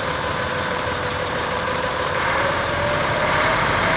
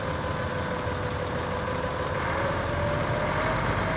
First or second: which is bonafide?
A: second